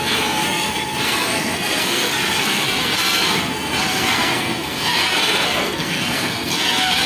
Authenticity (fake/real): fake